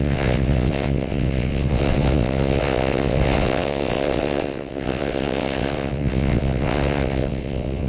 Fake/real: fake